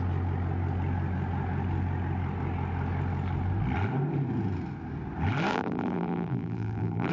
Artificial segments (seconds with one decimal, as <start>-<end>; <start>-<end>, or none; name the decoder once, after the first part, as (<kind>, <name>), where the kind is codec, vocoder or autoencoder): 5.5-7.1 (vocoder, BigVGAN v2)